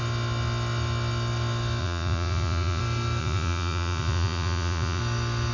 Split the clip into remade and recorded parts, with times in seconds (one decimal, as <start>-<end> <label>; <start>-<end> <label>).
0.0-1.8 recorded; 1.8-2.8 remade; 2.8-3.2 recorded; 3.2-5.0 remade; 5.0-5.5 recorded